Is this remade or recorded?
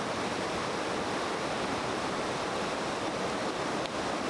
recorded